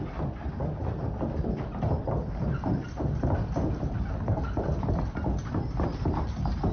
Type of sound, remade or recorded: recorded